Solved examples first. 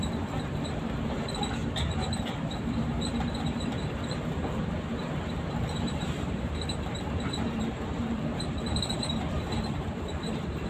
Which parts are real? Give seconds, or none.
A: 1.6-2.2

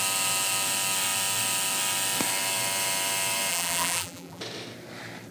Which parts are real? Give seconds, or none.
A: 0.0-3.5; 4.4-5.3